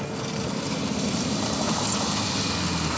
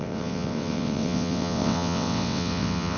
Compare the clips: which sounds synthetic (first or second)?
second